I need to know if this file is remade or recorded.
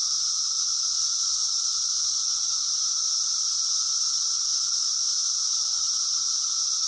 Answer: remade